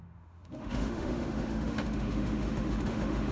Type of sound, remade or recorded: remade